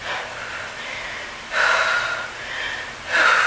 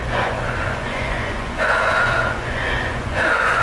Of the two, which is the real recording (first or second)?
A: first